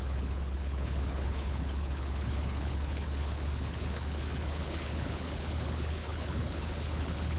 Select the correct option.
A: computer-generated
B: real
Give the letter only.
A